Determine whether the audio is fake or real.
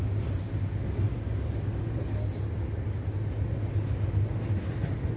real